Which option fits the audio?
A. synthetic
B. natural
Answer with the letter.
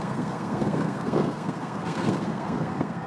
A